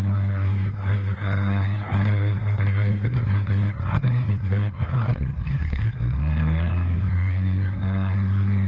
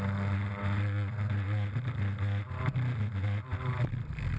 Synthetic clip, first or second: first